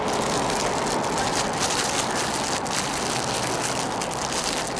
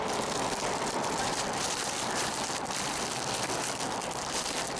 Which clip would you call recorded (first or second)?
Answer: first